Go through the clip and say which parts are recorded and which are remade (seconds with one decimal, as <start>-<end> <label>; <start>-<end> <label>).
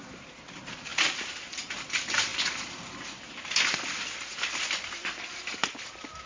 0.0-6.3 recorded